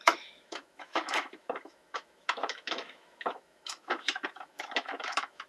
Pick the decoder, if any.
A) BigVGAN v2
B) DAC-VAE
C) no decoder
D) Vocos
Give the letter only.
B